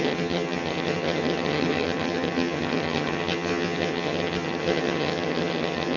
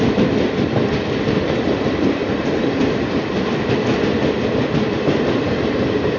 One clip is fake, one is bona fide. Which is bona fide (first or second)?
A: second